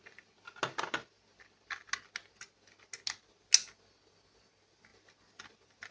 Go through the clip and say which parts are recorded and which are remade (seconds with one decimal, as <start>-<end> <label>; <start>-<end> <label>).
0.0-5.9 recorded